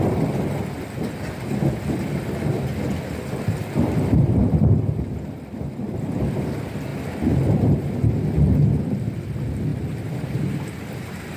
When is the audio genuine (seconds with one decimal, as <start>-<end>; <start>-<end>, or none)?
6.9-8.8; 9.7-11.4

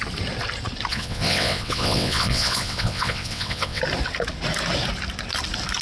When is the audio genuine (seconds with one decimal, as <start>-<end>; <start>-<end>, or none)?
0.0-0.9; 3.8-5.8

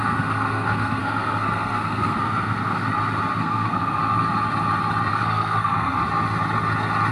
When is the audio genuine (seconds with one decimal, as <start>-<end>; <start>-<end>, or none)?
2.9-3.4; 4.0-5.1; 6.0-7.1

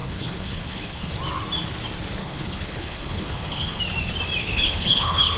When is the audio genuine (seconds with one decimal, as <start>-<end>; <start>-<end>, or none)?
1.1-2.2; 3.8-4.4

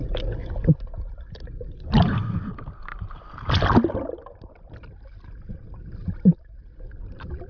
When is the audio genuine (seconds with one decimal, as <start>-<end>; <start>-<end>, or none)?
0.0-0.4; 1.1-2.9; 3.5-7.5

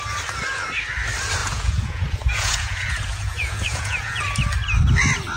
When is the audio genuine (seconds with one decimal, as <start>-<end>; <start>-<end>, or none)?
0.0-1.4; 4.2-5.4

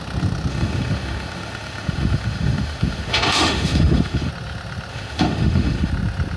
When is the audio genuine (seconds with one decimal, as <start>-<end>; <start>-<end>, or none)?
0.0-0.5; 4.3-4.9; 5.9-6.4